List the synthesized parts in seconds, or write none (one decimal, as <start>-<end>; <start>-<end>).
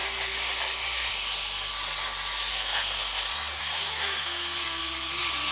2.5-3.0; 3.6-4.8